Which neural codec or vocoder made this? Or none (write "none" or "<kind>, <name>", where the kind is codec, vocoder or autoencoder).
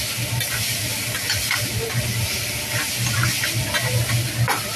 none